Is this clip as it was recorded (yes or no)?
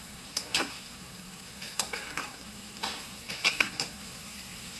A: no